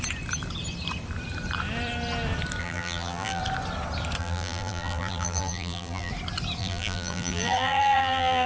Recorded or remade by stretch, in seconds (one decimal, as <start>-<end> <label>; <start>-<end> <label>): 0.0-2.6 recorded; 2.6-3.4 remade; 3.4-4.2 recorded; 4.2-6.1 remade; 6.1-6.6 recorded; 6.6-8.5 remade